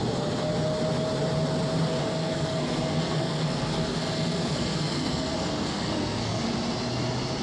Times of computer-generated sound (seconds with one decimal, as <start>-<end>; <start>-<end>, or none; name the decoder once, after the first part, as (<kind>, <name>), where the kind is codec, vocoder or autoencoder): 2.0-6.4 (codec, SNAC)